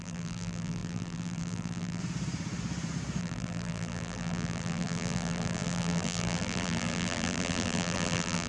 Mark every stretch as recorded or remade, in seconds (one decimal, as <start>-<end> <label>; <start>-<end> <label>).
0.0-2.0 remade; 2.0-3.2 recorded; 3.2-8.5 remade